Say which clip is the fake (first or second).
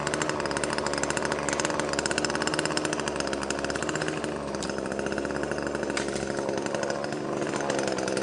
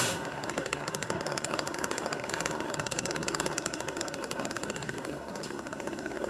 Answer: second